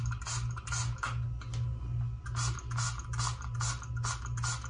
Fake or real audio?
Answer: real